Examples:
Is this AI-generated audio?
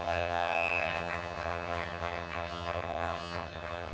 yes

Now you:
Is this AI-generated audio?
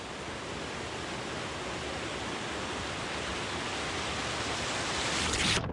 no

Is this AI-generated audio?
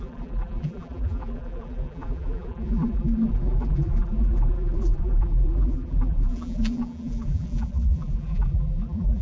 yes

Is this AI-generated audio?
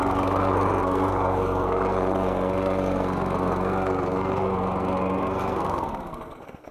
yes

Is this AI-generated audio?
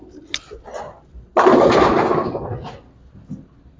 no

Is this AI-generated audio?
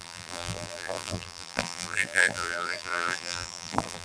yes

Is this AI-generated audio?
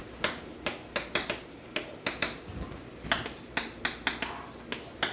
no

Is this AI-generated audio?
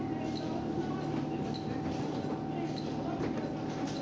no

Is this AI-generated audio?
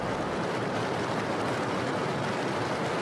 no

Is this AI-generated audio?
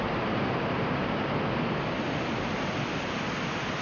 no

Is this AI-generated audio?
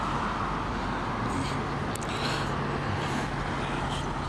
no